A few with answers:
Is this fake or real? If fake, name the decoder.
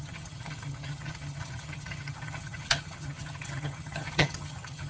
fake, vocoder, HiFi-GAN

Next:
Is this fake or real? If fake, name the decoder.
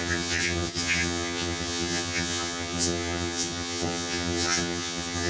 fake, vocoder, HiFi-GAN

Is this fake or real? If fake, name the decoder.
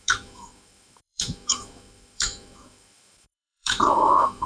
fake, autoencoder, DAC-VAE